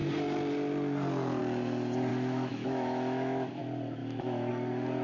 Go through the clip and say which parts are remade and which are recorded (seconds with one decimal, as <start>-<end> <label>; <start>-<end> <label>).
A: 0.0-2.1 recorded; 2.1-3.6 remade; 3.6-4.0 recorded; 4.0-4.5 remade; 4.5-5.0 recorded